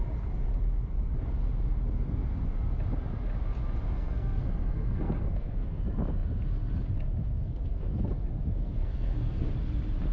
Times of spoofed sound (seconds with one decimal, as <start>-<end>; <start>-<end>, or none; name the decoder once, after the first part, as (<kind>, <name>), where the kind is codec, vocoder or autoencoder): 3.9-5.8 (codec, SNAC); 7.2-9.5